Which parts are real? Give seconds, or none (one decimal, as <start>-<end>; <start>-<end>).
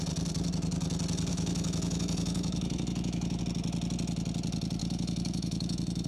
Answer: 0.0-1.3; 3.4-4.8